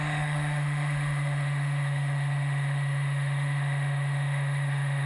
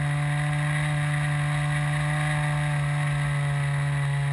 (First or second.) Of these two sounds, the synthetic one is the first